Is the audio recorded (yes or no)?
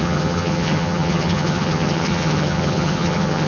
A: no